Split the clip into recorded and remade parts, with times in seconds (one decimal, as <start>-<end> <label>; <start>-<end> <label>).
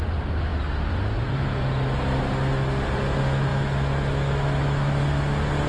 0.0-3.5 recorded; 3.5-5.0 remade; 5.0-5.7 recorded